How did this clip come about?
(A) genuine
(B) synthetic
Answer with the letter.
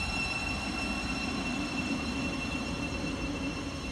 B